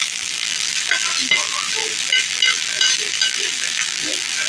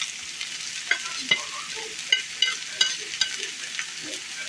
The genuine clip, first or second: second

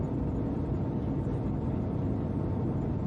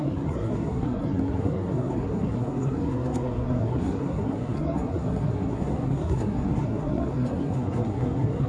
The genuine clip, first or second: first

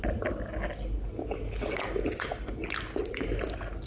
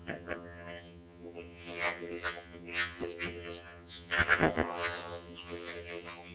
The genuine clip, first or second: first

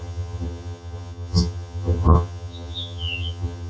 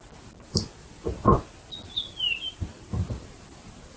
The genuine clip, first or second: second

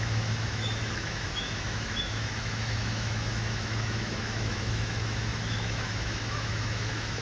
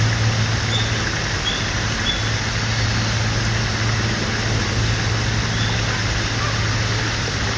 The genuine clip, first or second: second